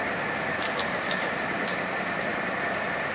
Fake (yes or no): yes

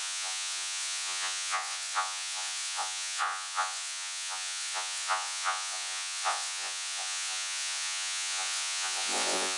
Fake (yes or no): yes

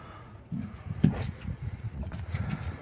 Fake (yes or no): yes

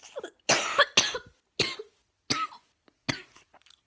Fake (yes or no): no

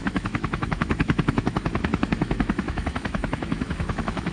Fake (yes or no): yes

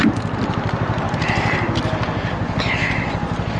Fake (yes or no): no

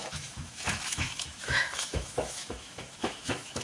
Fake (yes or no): yes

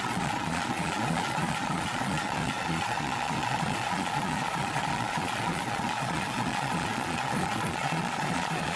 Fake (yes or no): yes